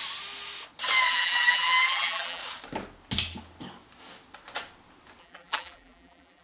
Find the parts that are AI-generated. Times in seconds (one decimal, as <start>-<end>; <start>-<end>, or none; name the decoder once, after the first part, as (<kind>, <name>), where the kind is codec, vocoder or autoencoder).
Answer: 1.1-2.4 (vocoder, BigVGAN v2); 5.2-6.4